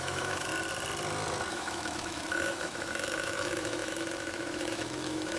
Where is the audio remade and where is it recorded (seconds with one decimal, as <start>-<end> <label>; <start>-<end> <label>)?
0.0-0.5 remade; 0.5-1.5 recorded; 1.5-5.4 remade